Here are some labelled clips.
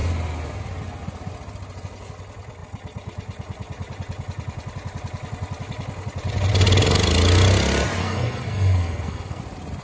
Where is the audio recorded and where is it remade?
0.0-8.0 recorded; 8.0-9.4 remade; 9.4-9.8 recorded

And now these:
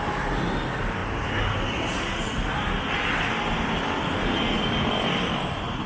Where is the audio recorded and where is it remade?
0.0-5.9 recorded

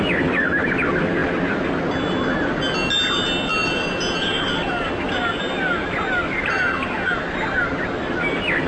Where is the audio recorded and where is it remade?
0.0-8.7 recorded

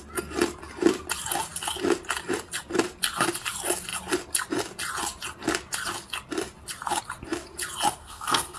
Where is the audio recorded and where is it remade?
0.0-8.0 recorded; 8.0-8.6 remade